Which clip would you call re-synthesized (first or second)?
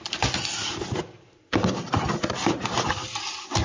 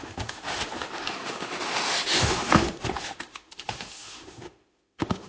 second